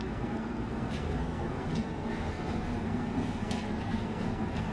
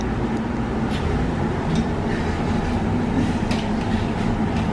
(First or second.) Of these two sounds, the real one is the second